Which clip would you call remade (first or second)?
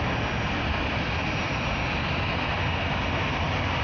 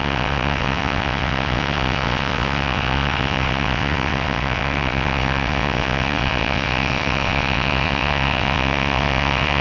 second